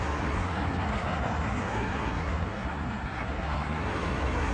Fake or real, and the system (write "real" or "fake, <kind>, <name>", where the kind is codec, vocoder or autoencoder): fake, codec, SNAC